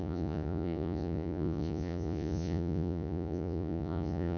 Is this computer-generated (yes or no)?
yes